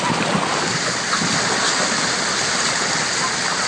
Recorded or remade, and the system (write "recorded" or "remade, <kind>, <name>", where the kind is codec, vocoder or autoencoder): recorded